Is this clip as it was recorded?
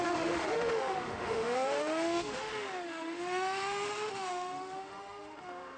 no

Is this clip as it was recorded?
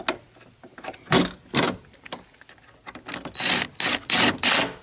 yes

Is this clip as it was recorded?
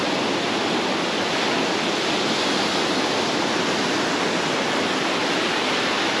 yes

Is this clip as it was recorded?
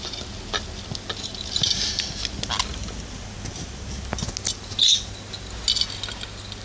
yes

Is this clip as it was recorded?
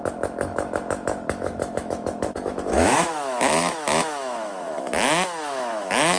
no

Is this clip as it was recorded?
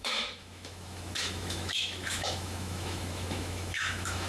no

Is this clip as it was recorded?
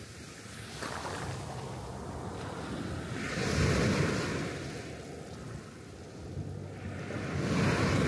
yes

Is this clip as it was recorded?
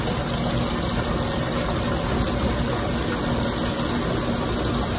yes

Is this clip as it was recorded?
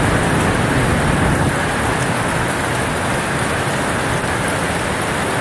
yes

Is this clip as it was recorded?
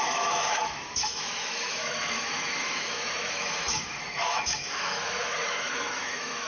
no